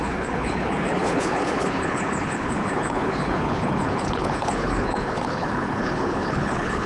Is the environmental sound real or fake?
fake